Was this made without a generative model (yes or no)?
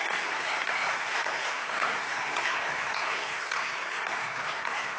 no